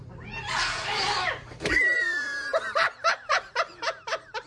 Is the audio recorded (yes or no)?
no